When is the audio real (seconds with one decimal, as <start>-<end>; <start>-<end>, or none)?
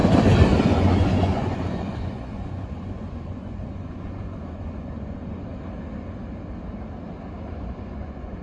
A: 0.0-0.6; 5.5-7.5